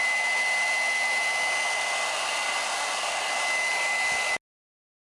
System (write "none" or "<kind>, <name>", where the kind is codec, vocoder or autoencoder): none